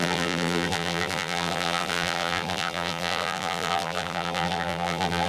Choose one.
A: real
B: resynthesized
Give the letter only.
B